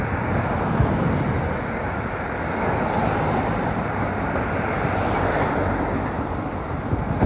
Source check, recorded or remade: recorded